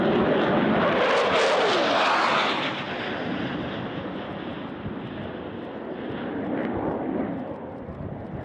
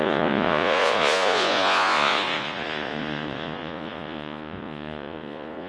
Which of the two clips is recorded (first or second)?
first